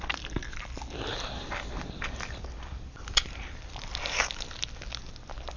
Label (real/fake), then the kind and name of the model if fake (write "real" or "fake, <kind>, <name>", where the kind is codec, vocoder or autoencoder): real